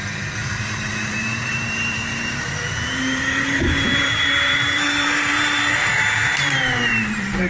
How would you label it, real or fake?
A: fake